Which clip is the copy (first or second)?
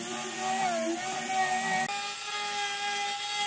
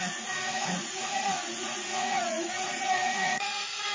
second